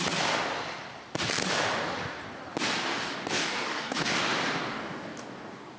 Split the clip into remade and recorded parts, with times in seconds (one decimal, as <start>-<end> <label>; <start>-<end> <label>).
0.0-2.9 recorded; 2.9-4.2 remade; 4.2-4.7 recorded; 4.7-5.8 remade